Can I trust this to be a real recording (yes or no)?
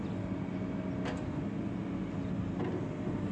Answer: yes